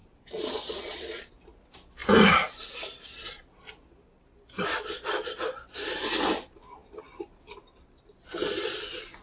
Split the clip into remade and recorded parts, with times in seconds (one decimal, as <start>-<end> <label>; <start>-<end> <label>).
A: 0.0-1.3 remade; 1.3-9.2 recorded